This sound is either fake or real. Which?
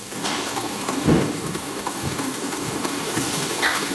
fake